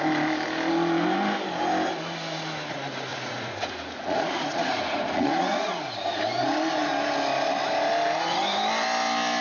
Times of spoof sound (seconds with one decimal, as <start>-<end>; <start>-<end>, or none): 3.1-5.7